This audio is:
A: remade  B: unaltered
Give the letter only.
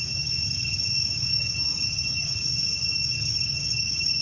A